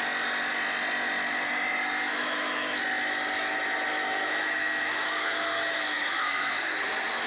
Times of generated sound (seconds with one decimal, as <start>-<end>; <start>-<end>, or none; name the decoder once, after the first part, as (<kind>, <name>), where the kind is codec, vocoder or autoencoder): 2.1-2.8 (autoencoder, DAC-VAE); 3.9-6.8